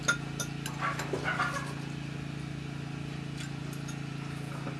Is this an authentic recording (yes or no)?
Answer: yes